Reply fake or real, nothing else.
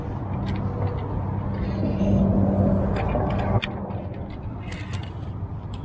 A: real